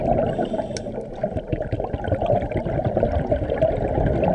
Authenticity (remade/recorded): recorded